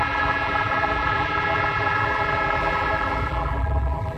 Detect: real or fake fake